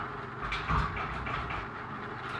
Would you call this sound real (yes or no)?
yes